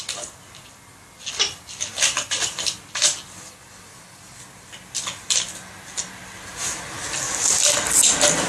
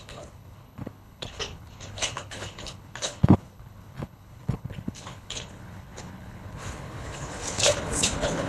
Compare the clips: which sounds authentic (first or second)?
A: first